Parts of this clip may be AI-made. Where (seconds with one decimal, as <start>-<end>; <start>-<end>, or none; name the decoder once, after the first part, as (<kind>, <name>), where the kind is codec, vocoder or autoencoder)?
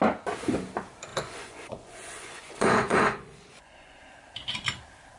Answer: 1.1-4.2 (vocoder, Vocos)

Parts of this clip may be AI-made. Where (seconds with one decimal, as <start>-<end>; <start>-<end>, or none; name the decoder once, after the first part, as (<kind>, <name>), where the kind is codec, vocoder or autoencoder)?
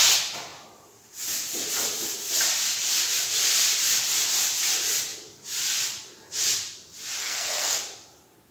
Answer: 7.2-7.8 (codec, SNAC)